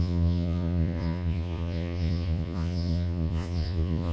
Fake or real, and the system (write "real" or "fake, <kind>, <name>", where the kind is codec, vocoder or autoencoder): fake, vocoder, Vocos